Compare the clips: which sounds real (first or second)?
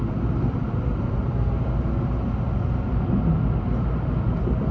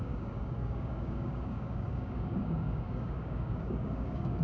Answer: first